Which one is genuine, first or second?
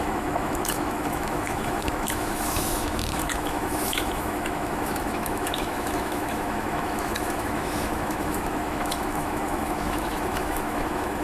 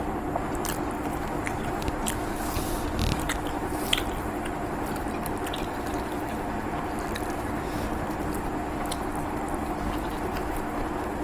second